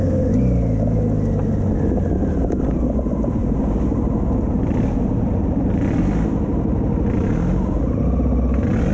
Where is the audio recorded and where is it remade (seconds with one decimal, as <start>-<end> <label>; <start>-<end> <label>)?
0.0-8.9 recorded